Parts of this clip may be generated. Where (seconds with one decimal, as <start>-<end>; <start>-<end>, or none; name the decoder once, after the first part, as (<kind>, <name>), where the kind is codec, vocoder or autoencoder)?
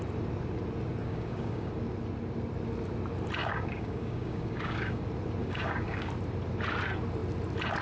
1.0-1.7 (codec, DAC); 3.4-5.0; 5.4-6.1